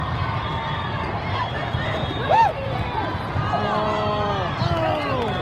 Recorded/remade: recorded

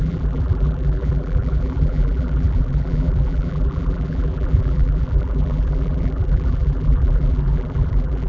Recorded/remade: remade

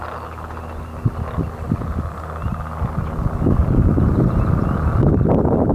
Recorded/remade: recorded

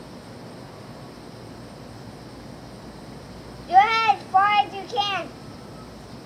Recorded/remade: recorded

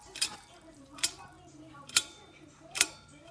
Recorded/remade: remade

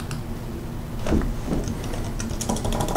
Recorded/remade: recorded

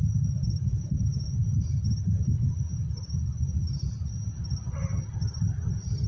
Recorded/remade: recorded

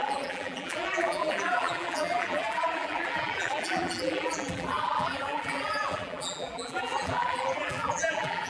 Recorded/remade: remade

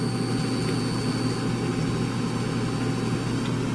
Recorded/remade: recorded